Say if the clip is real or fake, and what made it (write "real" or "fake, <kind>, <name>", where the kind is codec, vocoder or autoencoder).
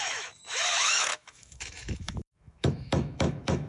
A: fake, autoencoder, DAC-VAE